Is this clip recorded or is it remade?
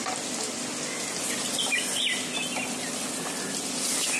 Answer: recorded